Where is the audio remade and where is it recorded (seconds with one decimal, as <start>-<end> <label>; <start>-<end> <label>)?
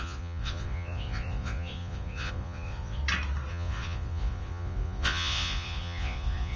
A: 0.0-3.0 remade; 3.0-3.5 recorded; 3.5-6.6 remade